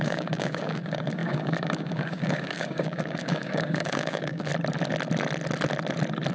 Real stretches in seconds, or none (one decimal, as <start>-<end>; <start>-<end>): 4.5-6.3